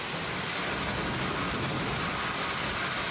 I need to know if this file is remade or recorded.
recorded